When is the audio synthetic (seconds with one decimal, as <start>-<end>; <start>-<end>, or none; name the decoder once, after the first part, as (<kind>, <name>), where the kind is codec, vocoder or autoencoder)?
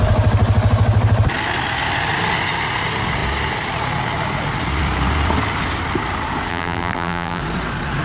6.5-7.4 (vocoder, BigVGAN v2)